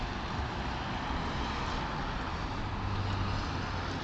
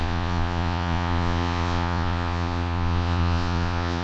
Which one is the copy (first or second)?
second